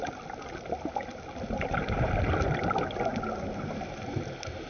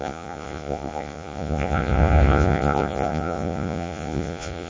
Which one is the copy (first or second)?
second